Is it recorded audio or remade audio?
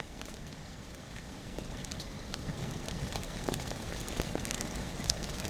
remade